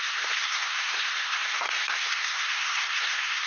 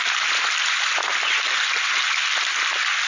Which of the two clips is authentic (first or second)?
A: second